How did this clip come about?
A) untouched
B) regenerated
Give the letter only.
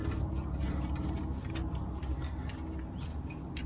A